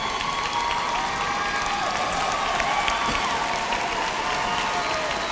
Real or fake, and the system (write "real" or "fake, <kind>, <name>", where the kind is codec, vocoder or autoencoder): real